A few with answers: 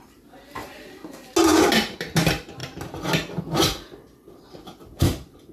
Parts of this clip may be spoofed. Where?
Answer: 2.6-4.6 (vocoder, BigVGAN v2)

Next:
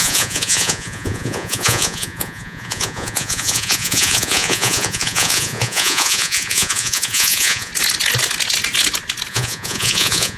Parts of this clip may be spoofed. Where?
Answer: 0.0-7.7 (vocoder, Vocos); 9.3-10.4

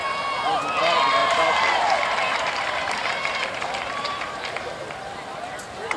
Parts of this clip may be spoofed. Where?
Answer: 1.2-4.5 (vocoder, BigVGAN v2)